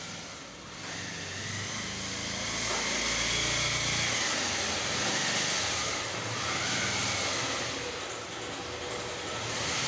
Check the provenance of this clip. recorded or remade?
recorded